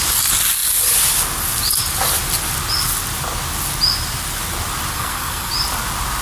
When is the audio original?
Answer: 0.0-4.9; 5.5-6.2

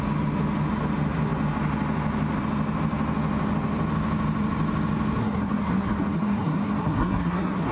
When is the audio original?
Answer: 0.0-5.2

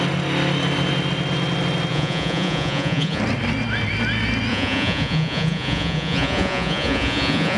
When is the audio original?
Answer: 0.0-1.9; 3.2-4.5

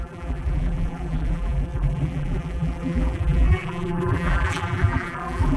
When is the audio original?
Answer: none

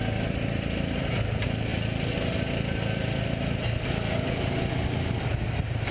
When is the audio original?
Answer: 0.0-5.9